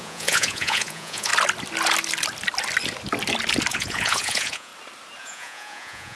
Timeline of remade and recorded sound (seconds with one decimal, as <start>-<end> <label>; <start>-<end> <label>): 0.0-1.3 remade; 1.3-3.7 recorded; 3.7-4.7 remade; 4.7-5.2 recorded; 5.2-6.2 remade